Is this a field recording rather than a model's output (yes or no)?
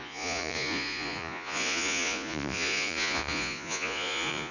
no